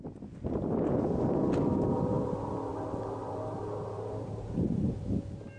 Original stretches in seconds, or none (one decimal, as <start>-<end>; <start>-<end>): 0.0-2.7; 4.9-5.6

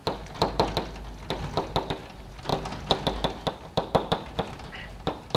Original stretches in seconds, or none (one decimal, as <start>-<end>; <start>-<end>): 0.0-1.9; 2.5-3.5

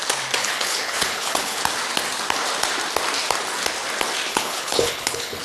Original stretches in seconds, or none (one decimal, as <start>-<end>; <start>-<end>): 0.0-0.4; 1.6-4.3

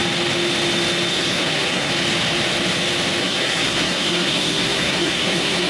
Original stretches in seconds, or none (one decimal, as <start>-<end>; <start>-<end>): 0.0-1.1; 1.9-3.2

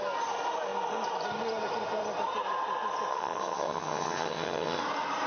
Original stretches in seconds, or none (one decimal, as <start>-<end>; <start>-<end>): 0.0-3.1; 4.8-5.3

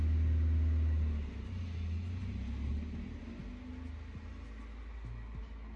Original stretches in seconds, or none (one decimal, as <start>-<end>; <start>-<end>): 0.0-5.8

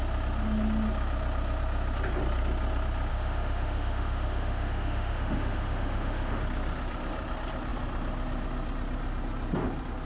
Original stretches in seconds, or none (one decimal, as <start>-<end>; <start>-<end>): 0.0-3.1; 6.4-10.1